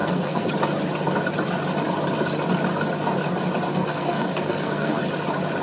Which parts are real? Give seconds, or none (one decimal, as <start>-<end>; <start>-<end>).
0.5-3.7; 5.0-5.6